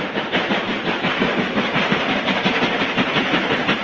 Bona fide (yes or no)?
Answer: no